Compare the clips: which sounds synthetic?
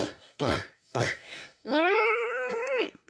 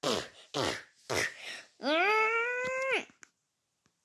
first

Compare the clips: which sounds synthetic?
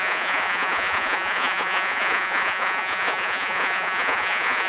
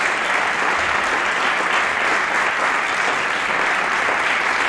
first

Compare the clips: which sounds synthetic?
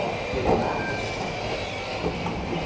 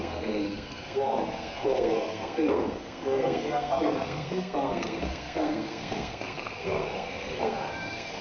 second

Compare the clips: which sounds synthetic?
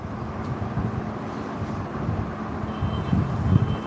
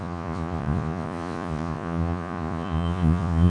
second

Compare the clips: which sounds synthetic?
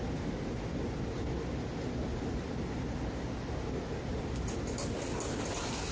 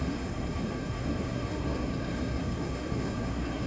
second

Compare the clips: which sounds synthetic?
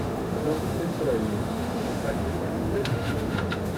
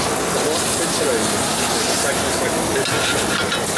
first